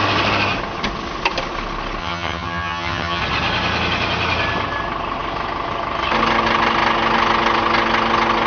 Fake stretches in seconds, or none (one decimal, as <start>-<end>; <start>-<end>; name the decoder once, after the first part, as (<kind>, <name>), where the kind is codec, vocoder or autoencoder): 2.0-3.2 (vocoder, HiFi-GAN)